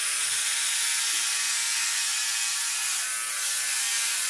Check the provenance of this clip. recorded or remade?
recorded